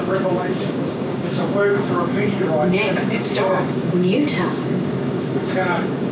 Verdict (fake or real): fake